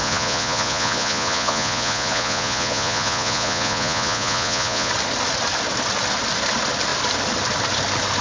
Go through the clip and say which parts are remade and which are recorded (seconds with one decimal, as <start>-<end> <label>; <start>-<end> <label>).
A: 0.0-4.9 remade; 4.9-8.2 recorded